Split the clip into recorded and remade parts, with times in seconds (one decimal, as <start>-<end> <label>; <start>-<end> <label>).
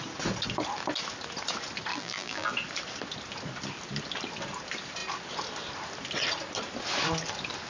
0.0-1.9 recorded; 1.9-2.5 remade; 2.5-7.7 recorded